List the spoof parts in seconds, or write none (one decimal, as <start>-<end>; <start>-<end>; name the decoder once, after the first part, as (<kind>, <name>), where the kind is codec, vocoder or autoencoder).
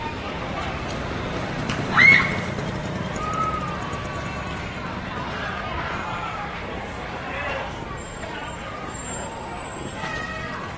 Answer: 0.0-4.0 (vocoder, BigVGAN v2); 4.6-9.7